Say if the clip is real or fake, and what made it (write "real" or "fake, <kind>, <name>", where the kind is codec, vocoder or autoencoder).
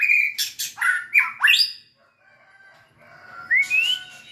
real